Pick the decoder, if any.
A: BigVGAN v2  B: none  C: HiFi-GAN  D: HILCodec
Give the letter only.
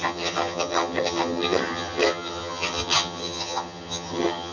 C